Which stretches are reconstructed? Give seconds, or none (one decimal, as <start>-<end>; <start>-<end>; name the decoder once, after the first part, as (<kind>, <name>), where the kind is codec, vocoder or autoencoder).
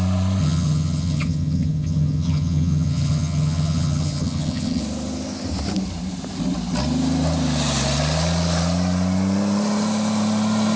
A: 0.4-4.8 (vocoder, HiFi-GAN)